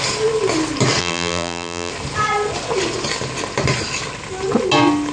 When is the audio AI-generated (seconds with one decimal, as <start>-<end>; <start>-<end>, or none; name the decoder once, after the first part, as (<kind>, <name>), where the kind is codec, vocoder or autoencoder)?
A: 1.0-1.9 (vocoder, BigVGAN v2)